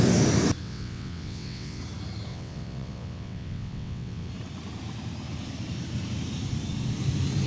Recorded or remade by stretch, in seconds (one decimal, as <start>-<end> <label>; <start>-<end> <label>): 0.0-0.6 recorded; 0.6-1.8 remade; 1.8-2.3 recorded; 2.3-4.3 remade; 4.3-7.5 recorded